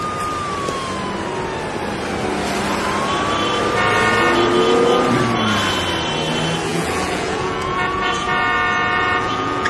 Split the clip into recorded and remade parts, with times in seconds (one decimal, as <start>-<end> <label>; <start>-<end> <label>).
0.0-6.7 recorded; 6.7-9.7 remade